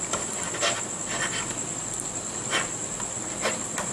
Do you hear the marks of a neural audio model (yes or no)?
no